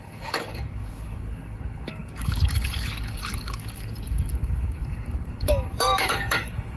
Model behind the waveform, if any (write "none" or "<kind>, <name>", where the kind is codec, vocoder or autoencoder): codec, DAC